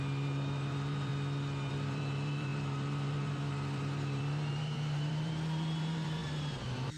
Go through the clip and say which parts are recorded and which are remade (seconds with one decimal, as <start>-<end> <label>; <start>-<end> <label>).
0.0-1.1 remade; 1.1-1.7 recorded; 1.7-7.0 remade